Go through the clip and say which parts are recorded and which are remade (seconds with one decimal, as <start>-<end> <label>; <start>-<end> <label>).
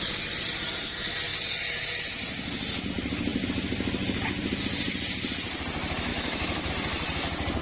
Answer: 0.0-6.1 recorded; 6.1-6.7 remade; 6.7-7.6 recorded